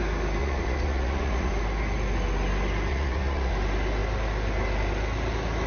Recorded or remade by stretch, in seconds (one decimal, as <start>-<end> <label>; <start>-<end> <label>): 0.0-0.4 recorded; 0.4-1.5 remade; 1.5-2.9 recorded; 2.9-3.5 remade; 3.5-5.7 recorded